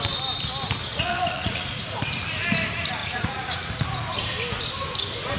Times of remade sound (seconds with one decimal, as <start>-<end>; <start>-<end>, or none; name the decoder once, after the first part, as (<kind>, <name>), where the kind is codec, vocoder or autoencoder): 0.9-1.7 (vocoder, Vocos); 3.0-3.7